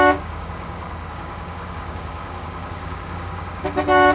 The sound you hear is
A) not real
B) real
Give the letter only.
A